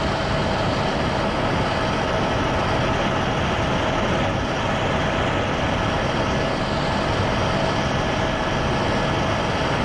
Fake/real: fake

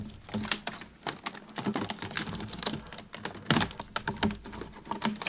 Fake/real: real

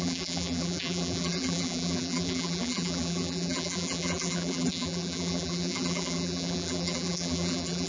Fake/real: fake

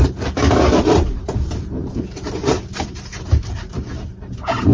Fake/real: fake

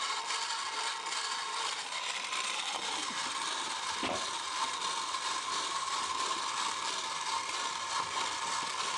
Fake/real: fake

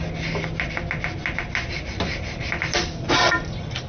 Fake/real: real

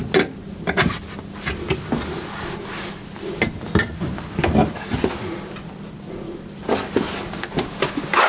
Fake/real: real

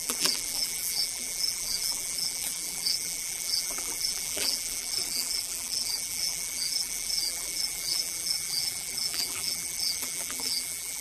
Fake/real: fake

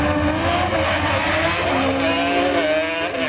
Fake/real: real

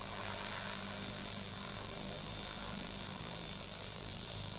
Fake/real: fake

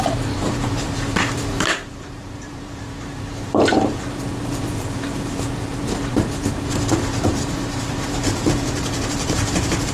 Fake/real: fake